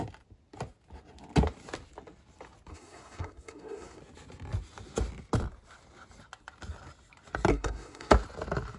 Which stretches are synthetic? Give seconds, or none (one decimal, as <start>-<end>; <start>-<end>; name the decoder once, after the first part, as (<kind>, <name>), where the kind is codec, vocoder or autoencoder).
2.7-4.0 (codec, SNAC); 7.5-8.1